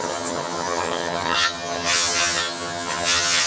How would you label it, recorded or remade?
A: remade